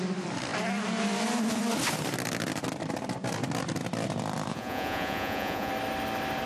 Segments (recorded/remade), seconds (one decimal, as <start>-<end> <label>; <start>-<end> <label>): 0.0-4.5 recorded; 4.5-5.7 remade; 5.7-6.5 recorded